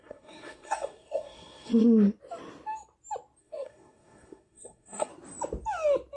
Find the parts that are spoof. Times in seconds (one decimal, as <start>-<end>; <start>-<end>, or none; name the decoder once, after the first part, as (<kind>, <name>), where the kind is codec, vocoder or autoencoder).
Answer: 0.0-1.7 (codec, SNAC); 3.4-5.1